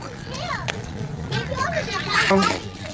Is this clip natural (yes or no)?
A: no